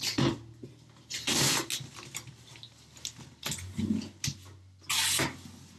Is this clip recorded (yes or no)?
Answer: yes